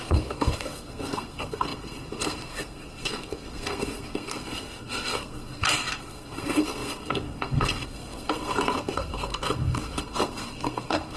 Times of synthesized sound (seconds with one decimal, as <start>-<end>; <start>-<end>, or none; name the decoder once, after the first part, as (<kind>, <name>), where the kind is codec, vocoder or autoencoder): 0.0-11.2 (codec, SNAC)